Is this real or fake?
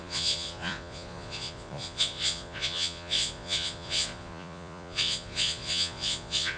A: fake